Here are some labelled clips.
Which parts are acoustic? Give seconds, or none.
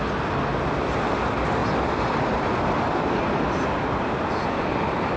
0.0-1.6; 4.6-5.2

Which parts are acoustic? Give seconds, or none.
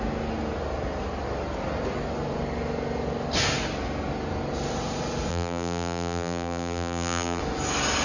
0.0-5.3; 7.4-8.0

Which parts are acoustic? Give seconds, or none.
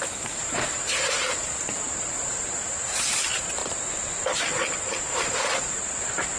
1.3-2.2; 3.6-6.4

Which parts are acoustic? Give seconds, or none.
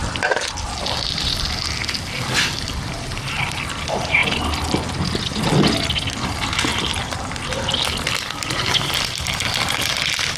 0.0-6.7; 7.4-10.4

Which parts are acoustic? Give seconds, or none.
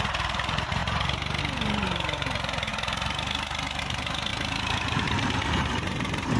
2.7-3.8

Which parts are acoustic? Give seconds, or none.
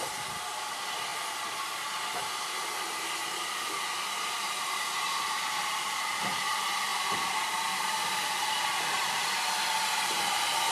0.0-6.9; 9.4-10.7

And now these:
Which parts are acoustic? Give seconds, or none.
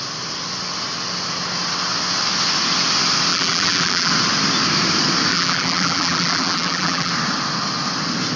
0.0-3.3; 4.1-5.3; 7.1-8.4